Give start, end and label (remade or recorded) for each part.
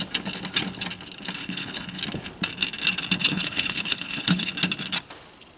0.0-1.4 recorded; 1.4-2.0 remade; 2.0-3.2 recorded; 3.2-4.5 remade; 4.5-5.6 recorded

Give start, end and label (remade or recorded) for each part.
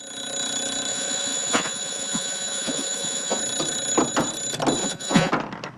0.0-0.9 recorded; 0.9-3.4 remade; 3.4-4.8 recorded; 4.8-5.3 remade; 5.3-5.8 recorded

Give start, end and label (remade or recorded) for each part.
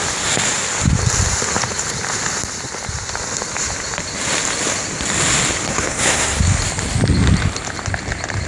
0.0-5.7 recorded; 5.7-6.4 remade; 6.4-8.5 recorded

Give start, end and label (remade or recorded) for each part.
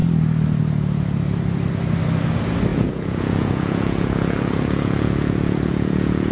0.0-2.7 recorded; 2.7-6.3 remade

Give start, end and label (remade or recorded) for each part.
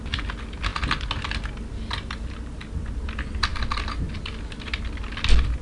0.0-5.6 recorded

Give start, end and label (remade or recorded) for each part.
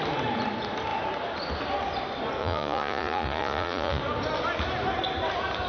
0.0-2.4 recorded; 2.4-4.0 remade; 4.0-5.7 recorded